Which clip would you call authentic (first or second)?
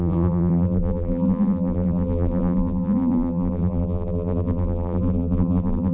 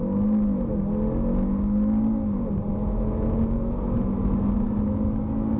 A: second